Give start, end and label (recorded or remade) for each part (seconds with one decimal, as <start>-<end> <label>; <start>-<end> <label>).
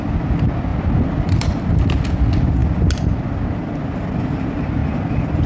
0.0-0.7 recorded; 0.7-1.7 remade; 1.7-5.5 recorded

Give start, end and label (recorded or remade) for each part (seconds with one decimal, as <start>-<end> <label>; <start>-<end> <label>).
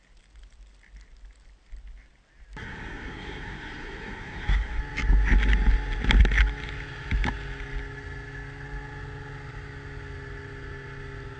0.0-2.6 recorded; 2.6-4.8 remade; 4.8-11.4 recorded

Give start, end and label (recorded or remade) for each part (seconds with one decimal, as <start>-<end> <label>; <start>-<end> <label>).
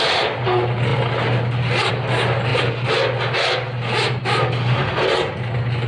0.0-5.9 recorded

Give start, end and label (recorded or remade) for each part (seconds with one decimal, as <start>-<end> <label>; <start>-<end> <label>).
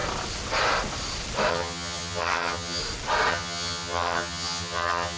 0.0-1.5 recorded; 1.5-2.8 remade; 2.8-3.3 recorded; 3.3-5.2 remade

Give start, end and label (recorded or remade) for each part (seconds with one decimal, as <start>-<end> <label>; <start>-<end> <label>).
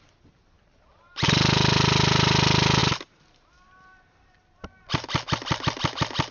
0.0-6.3 recorded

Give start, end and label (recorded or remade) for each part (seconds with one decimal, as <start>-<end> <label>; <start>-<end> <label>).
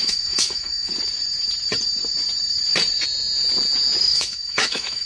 0.0-0.9 remade; 0.9-4.0 recorded; 4.0-5.1 remade